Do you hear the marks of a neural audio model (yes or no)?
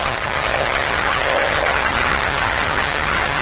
yes